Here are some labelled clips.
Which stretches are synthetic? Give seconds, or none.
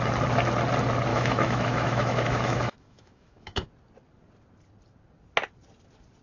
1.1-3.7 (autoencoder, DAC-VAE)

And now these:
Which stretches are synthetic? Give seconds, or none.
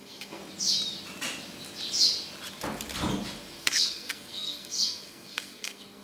0.0-0.4 (codec, SNAC); 3.6-6.0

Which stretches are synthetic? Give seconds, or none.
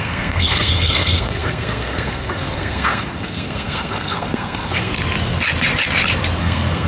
0.0-4.9 (codec, SNAC); 6.4-6.9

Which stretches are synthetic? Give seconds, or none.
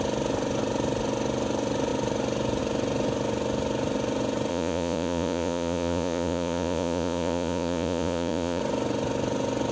4.5-8.6 (vocoder, Vocos)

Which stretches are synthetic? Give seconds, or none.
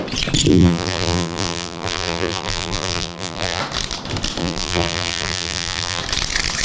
0.5-3.6 (vocoder, BigVGAN v2); 4.4-6.0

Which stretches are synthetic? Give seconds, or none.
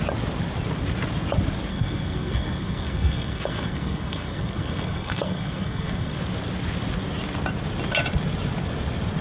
1.7-6.2 (codec, SNAC)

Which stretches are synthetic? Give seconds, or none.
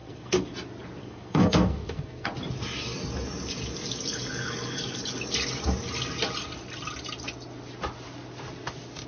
0.0-0.5 (codec, SNAC); 1.0-2.3